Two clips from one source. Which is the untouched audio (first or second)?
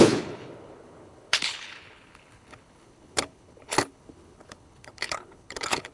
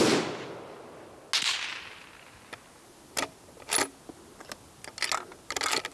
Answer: second